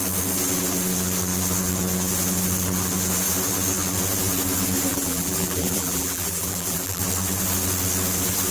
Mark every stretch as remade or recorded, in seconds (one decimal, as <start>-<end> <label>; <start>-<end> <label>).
0.0-4.9 recorded; 4.9-7.0 remade; 7.0-8.5 recorded